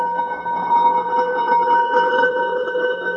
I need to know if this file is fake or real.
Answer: fake